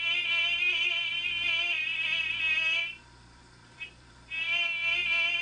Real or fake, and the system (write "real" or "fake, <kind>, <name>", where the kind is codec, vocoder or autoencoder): fake, vocoder, BigVGAN v2